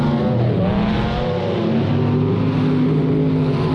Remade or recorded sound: recorded